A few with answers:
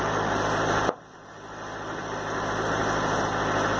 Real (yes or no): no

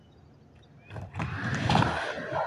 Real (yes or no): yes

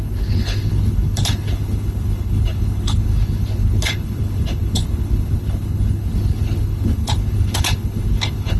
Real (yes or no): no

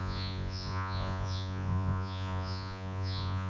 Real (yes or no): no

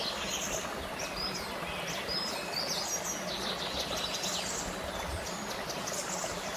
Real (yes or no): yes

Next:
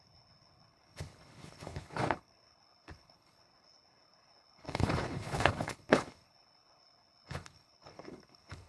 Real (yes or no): no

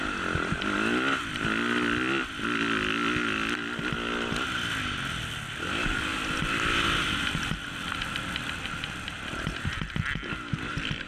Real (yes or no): yes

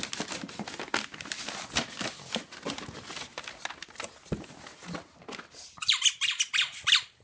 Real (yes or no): yes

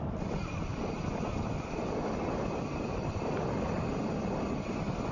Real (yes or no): yes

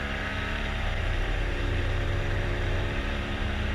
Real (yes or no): no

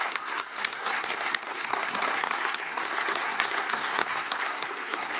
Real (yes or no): no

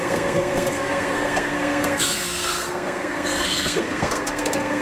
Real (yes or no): no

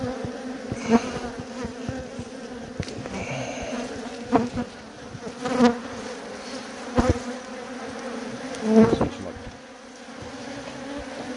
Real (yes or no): yes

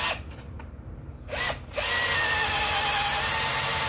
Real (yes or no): yes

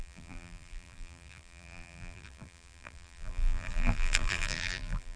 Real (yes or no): no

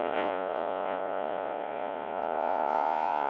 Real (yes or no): no